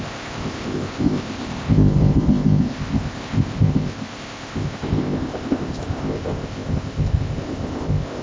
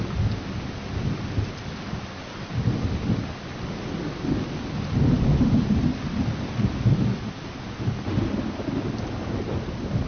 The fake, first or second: first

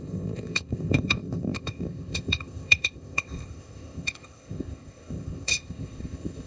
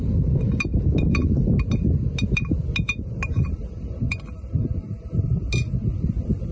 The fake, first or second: first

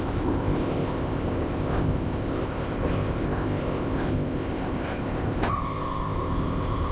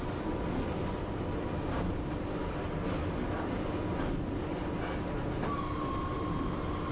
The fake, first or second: first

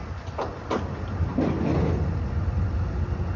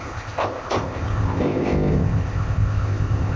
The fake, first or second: second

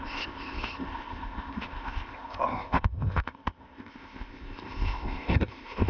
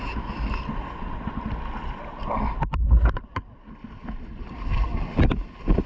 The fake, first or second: first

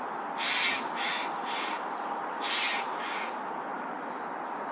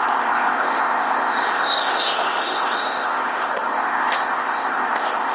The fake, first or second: second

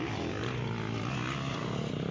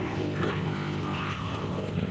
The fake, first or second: second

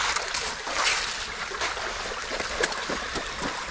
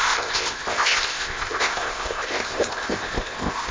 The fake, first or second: second